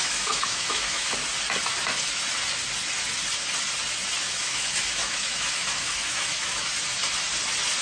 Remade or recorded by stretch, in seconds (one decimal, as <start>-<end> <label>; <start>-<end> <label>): 0.0-1.2 remade; 1.2-4.2 recorded; 4.2-6.7 remade; 6.7-7.8 recorded

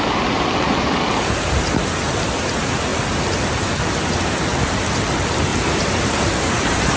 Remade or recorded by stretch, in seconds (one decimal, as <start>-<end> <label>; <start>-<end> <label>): 0.0-2.9 recorded; 2.9-3.5 remade; 3.5-5.5 recorded; 5.5-6.2 remade; 6.2-7.0 recorded

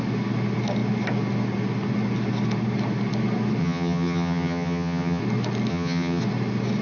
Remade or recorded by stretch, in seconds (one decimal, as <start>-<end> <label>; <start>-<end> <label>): 0.0-3.6 recorded; 3.6-5.2 remade; 5.2-5.7 recorded; 5.7-6.2 remade; 6.2-6.8 recorded